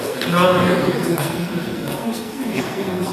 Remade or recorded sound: remade